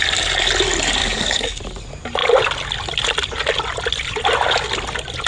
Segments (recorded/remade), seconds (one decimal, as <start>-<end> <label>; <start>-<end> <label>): 0.0-1.0 recorded; 1.0-1.6 remade; 1.6-5.3 recorded